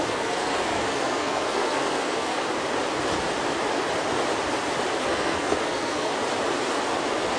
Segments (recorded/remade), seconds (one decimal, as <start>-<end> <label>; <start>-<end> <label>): 0.0-2.4 remade; 2.4-5.0 recorded; 5.0-6.1 remade; 6.1-7.4 recorded